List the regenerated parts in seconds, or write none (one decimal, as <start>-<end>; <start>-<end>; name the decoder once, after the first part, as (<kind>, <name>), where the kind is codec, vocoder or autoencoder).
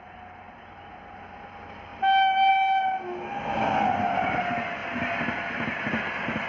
none